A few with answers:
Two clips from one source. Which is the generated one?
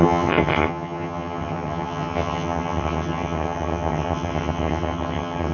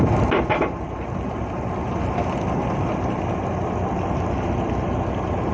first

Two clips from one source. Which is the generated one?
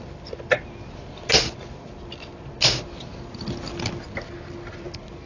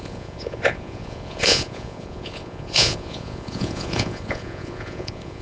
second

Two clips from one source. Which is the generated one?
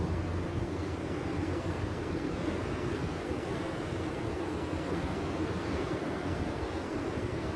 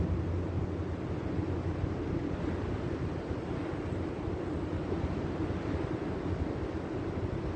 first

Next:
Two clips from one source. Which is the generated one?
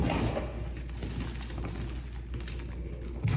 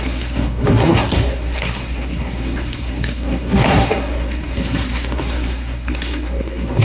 second